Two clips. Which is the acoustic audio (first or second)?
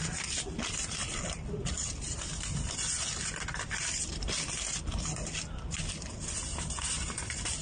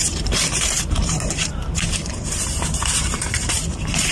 first